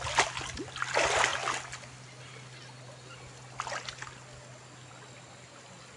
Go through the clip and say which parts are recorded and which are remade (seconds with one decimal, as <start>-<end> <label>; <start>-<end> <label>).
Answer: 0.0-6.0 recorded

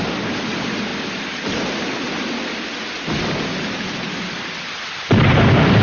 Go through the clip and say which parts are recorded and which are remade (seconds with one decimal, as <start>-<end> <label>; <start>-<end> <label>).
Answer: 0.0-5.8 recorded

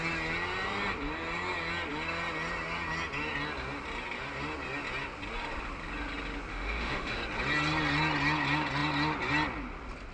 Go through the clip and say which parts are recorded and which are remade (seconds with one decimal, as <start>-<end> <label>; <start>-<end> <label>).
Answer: 0.0-6.5 recorded; 6.5-7.2 remade; 7.2-10.1 recorded

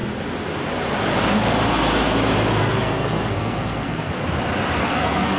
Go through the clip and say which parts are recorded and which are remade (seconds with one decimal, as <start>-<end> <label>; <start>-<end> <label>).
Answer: 0.0-2.6 recorded; 2.6-4.1 remade; 4.1-4.8 recorded; 4.8-5.4 remade

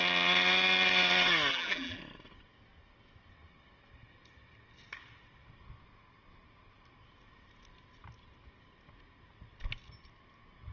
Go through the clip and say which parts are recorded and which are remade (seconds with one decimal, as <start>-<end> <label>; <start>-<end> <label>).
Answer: 0.0-1.5 recorded; 1.5-2.0 remade; 2.0-10.7 recorded

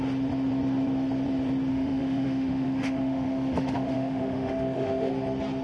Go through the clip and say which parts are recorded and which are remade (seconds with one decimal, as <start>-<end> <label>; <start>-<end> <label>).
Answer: 0.0-1.7 recorded; 1.7-5.1 remade; 5.1-5.6 recorded